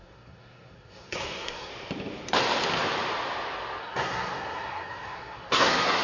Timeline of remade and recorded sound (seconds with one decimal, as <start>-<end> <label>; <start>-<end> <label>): 0.0-1.7 remade; 1.7-3.8 recorded; 3.8-6.0 remade